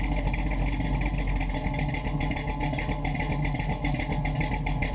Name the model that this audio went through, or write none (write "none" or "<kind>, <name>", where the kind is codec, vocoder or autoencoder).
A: none